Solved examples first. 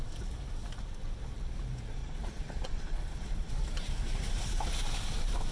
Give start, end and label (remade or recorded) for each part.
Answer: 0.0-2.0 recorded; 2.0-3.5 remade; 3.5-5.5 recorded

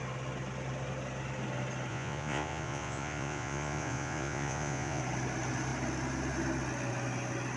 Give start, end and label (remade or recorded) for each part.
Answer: 0.0-1.9 recorded; 1.9-5.0 remade; 5.0-7.6 recorded

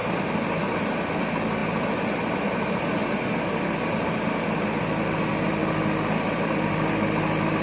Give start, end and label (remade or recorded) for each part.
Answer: 0.0-7.6 recorded

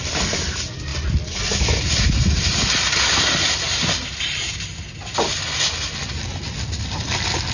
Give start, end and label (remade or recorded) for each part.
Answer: 0.0-7.5 recorded

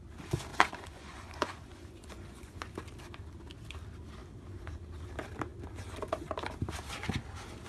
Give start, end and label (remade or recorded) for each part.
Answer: 0.0-0.5 recorded; 0.5-2.7 remade; 2.7-7.7 recorded